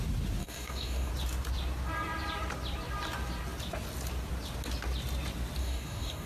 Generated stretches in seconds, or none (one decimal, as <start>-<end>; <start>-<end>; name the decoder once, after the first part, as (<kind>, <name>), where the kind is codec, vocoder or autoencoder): 0.4-1.1 (codec, DAC); 5.6-6.3